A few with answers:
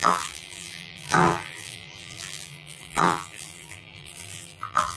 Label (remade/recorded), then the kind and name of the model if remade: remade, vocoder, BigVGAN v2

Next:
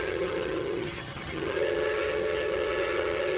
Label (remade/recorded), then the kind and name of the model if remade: remade, vocoder, HiFi-GAN